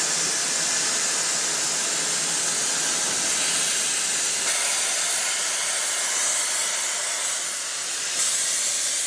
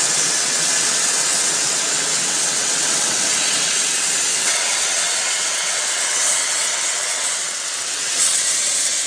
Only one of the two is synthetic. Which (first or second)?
second